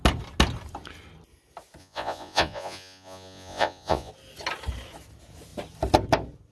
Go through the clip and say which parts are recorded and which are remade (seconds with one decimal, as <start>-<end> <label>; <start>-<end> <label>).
0.0-1.8 recorded; 1.8-4.1 remade; 4.1-6.5 recorded